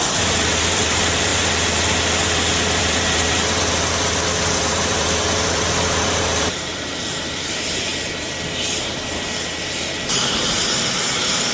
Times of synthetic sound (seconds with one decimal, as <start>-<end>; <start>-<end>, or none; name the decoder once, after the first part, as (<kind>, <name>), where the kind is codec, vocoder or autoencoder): 0.0-1.3 (vocoder, BigVGAN v2); 2.8-7.9; 9.6-11.5